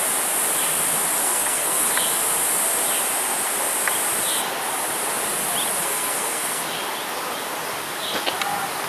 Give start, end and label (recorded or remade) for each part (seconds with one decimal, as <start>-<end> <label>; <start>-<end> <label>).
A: 0.0-1.2 recorded; 1.2-1.9 remade; 1.9-5.8 recorded; 5.8-6.6 remade; 6.6-8.9 recorded